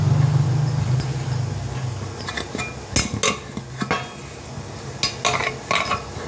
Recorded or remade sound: recorded